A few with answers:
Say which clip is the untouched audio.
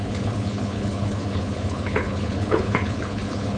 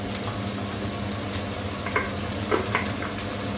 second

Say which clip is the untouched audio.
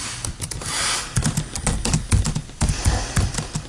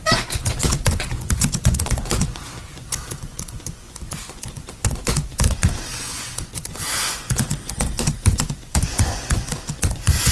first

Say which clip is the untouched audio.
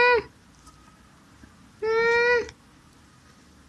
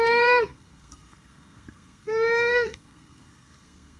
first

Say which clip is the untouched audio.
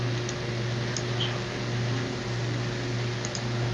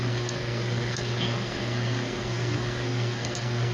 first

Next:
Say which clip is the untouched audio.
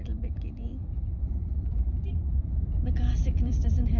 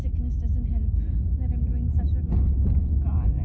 second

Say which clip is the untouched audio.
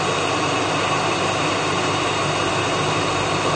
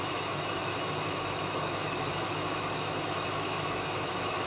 first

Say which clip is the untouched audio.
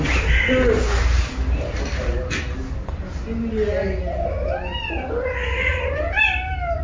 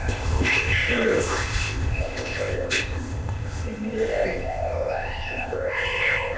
first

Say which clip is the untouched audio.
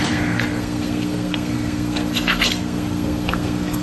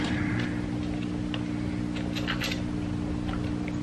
second